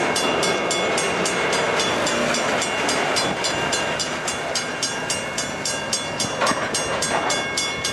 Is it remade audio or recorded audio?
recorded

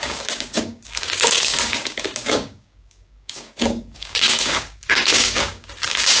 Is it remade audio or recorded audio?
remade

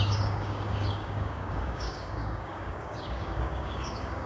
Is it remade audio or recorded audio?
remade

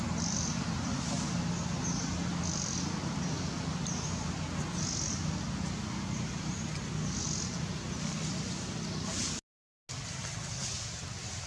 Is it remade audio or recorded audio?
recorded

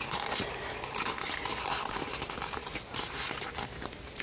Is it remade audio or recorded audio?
recorded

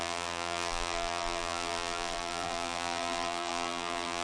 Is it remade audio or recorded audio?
remade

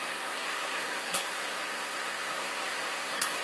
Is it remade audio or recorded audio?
remade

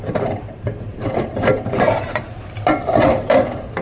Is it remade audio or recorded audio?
remade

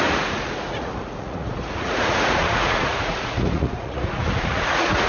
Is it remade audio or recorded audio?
remade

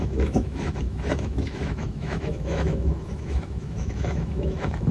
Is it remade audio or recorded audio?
remade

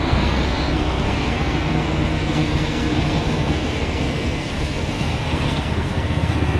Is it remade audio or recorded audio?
remade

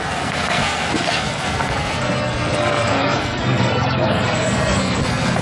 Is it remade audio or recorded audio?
remade